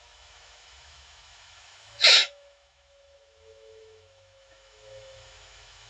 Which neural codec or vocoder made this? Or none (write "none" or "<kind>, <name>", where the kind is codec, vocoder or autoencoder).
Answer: autoencoder, DAC-VAE